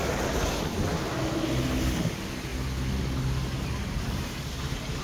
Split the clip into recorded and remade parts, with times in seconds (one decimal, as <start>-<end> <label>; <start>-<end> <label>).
0.0-5.0 recorded

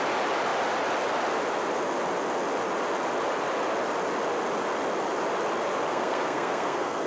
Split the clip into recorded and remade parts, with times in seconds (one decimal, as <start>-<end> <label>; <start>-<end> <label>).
0.0-5.9 recorded; 5.9-7.1 remade

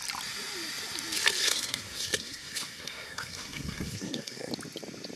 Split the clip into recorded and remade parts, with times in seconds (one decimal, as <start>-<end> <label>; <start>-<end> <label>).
0.0-1.4 recorded; 1.4-4.5 remade; 4.5-5.2 recorded

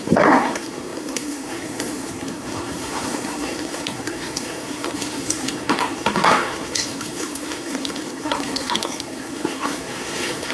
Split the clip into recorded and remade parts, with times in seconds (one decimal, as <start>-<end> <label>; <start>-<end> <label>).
0.0-10.5 remade

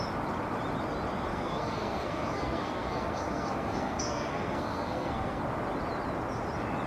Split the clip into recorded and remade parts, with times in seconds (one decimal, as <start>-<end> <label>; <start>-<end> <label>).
0.0-1.3 recorded; 1.3-5.4 remade; 5.4-6.9 recorded

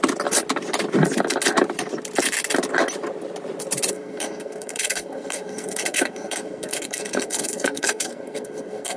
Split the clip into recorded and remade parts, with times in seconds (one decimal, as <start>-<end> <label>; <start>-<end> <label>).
0.0-3.9 recorded; 3.9-9.0 remade

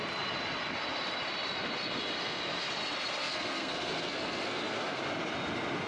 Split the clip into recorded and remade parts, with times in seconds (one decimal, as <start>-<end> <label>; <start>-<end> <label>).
0.0-3.2 recorded; 3.2-5.0 remade; 5.0-5.9 recorded